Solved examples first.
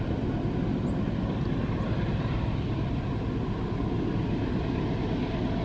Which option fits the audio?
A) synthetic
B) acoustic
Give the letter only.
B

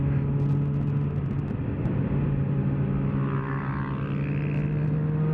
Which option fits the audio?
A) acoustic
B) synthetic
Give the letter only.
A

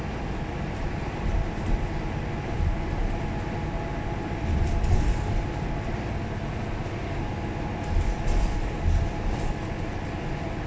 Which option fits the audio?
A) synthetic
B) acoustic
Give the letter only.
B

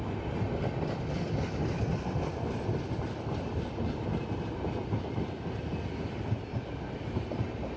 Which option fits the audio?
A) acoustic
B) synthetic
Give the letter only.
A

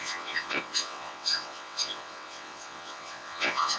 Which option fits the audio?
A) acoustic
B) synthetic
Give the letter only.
B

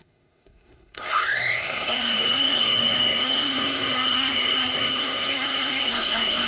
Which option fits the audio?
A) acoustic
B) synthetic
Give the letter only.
B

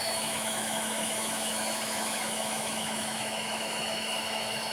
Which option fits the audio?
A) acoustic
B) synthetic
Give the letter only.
B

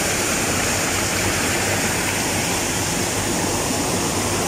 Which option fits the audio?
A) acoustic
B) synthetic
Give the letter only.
A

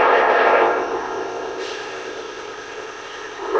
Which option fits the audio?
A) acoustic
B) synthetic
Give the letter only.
B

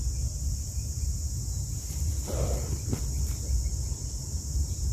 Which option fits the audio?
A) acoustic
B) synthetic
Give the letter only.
A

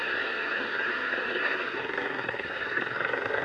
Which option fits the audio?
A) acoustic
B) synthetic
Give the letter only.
B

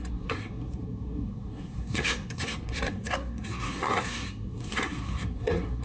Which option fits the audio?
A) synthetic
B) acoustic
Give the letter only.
A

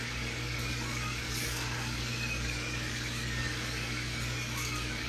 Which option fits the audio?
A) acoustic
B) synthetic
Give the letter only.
B